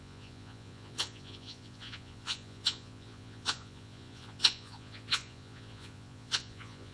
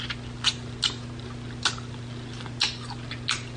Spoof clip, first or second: first